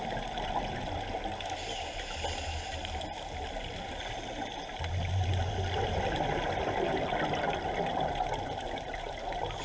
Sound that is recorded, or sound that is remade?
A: recorded